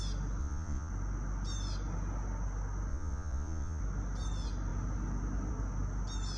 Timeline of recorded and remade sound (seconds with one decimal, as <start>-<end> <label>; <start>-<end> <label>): 0.0-0.4 recorded; 0.4-0.9 remade; 0.9-2.9 recorded; 2.9-3.8 remade; 3.8-6.4 recorded